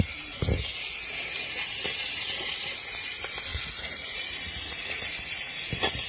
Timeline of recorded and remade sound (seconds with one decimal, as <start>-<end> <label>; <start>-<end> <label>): 0.0-3.5 recorded; 3.5-5.0 remade; 5.0-6.1 recorded